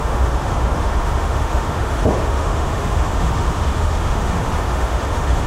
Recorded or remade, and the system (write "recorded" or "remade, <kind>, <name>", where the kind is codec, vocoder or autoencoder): remade, autoencoder, DAC-VAE